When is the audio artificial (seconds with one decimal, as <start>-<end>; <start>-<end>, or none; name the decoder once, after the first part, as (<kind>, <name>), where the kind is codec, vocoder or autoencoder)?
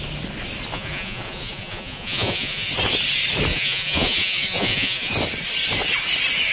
0.7-2.7 (vocoder, Vocos); 3.5-5.1